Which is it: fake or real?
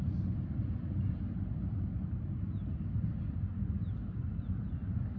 real